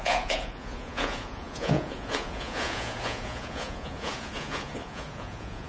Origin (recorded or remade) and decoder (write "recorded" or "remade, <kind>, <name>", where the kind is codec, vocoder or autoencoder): remade, vocoder, Vocos